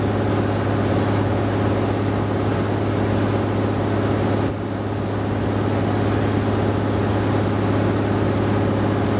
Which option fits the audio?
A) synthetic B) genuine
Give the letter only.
B